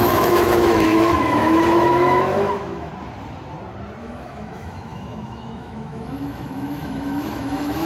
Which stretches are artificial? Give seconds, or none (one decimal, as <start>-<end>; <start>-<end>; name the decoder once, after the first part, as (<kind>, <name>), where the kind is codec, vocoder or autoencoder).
0.0-2.9 (autoencoder, DAC-VAE); 4.0-7.9